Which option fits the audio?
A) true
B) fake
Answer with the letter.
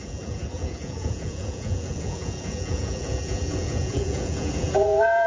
B